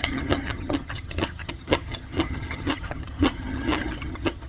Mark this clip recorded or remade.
remade